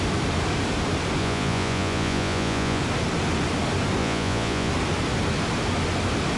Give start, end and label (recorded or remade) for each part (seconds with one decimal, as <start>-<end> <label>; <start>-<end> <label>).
0.0-1.2 recorded; 1.2-2.8 remade; 2.8-4.0 recorded; 4.0-4.7 remade; 4.7-6.4 recorded